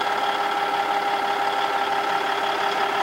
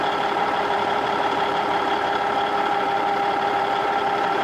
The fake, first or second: second